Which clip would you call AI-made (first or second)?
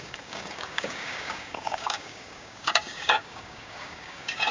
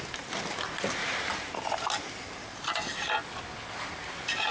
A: first